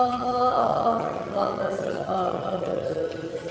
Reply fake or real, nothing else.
fake